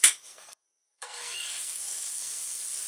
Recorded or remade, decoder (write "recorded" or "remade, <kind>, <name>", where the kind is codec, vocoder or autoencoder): remade, codec, SNAC